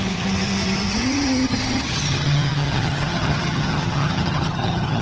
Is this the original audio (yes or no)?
no